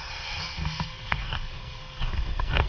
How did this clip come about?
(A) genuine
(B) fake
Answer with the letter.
B